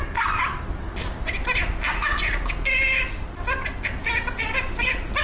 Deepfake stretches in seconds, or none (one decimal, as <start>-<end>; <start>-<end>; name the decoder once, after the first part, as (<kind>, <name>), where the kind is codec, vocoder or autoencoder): none